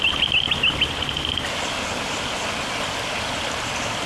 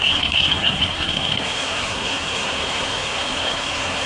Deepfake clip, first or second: second